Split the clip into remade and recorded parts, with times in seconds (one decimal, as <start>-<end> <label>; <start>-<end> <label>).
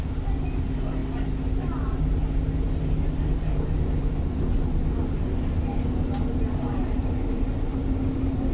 0.0-8.5 recorded